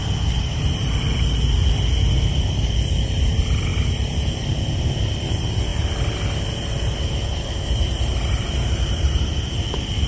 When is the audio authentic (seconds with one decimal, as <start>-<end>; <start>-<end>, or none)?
0.0-7.3; 9.3-10.1